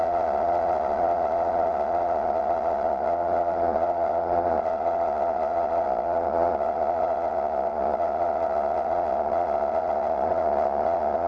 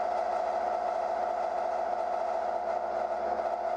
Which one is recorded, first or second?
second